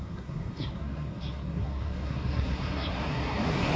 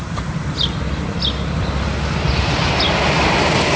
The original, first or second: second